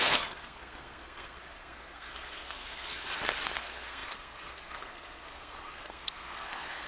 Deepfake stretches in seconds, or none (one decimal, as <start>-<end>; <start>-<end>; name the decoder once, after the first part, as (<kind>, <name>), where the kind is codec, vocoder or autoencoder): 0.0-3.1 (codec, SNAC); 3.6-6.9